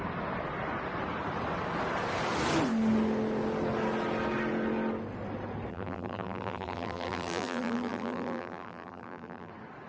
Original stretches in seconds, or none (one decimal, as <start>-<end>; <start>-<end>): 0.0-5.7; 9.5-9.9